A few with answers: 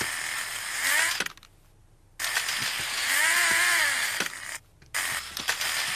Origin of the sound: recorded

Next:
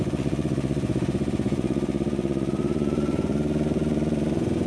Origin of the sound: remade